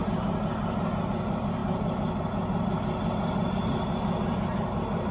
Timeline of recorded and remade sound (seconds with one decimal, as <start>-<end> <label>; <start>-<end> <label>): 0.0-5.1 recorded